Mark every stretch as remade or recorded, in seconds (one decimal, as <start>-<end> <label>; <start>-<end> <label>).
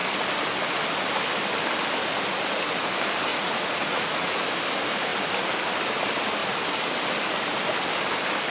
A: 0.0-3.3 recorded; 3.3-4.4 remade; 4.4-8.5 recorded